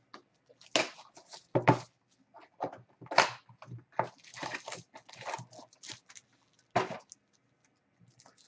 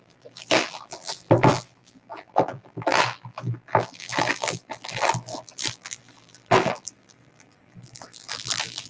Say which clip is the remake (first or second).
second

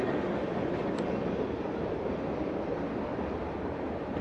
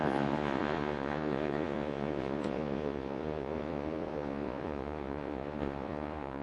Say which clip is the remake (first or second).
second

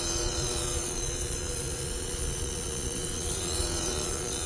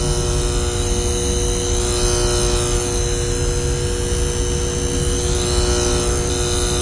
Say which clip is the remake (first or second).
first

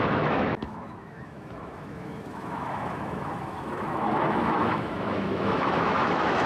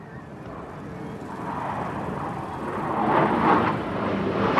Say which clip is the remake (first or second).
first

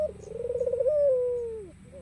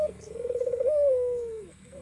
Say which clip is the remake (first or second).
second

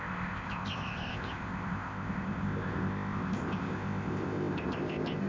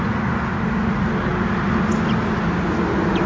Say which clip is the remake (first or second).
first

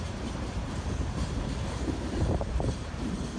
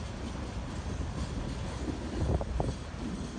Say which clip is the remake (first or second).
first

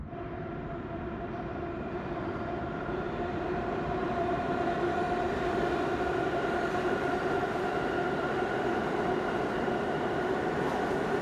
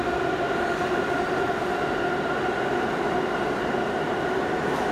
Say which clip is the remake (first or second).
first